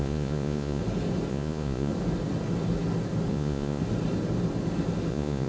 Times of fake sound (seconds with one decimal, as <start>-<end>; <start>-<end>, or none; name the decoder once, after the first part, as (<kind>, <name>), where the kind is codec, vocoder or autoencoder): 0.0-0.8 (vocoder, Vocos); 1.3-1.9; 3.3-3.8; 5.1-5.5